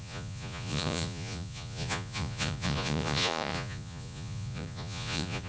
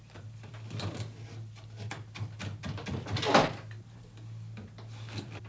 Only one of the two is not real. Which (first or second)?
first